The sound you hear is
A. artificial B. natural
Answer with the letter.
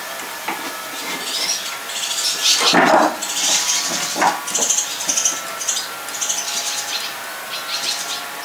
B